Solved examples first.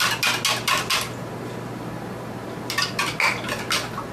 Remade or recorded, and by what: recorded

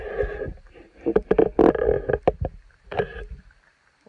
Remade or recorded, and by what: recorded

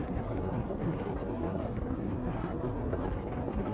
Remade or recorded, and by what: remade, codec, SNAC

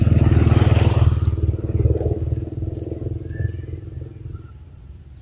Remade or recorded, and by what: recorded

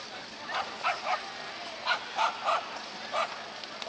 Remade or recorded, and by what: recorded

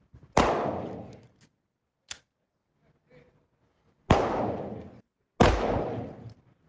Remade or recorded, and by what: recorded